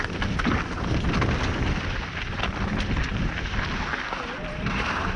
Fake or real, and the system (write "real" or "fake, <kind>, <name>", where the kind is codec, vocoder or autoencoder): real